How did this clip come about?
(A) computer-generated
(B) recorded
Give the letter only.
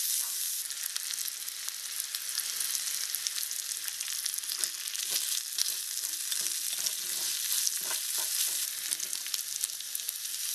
B